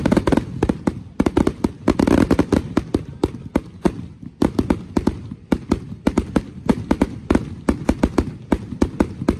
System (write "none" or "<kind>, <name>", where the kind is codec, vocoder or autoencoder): none